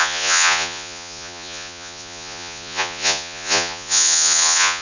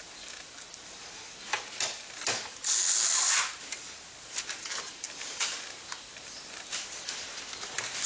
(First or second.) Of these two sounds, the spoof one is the first